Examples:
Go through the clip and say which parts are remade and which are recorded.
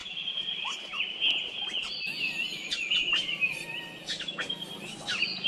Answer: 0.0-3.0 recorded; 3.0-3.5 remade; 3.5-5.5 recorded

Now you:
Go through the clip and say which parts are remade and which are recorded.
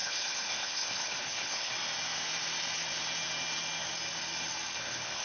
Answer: 0.0-1.7 remade; 1.7-4.8 recorded; 4.8-5.2 remade